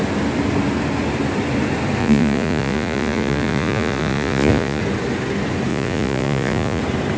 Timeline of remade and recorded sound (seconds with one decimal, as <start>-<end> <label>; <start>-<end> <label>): 0.0-2.0 recorded; 2.0-4.8 remade; 4.8-5.7 recorded; 5.7-6.8 remade; 6.8-7.2 recorded